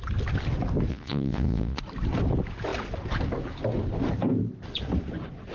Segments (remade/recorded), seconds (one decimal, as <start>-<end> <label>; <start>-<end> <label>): 0.0-0.9 recorded; 0.9-1.8 remade; 1.8-5.5 recorded